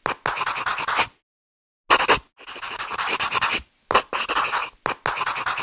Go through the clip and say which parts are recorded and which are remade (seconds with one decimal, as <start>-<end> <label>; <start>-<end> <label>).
0.0-5.6 recorded